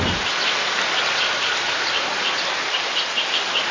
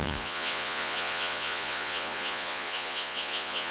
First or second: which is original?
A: first